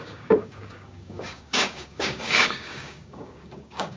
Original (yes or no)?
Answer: no